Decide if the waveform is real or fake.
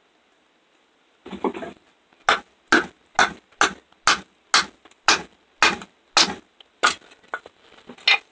real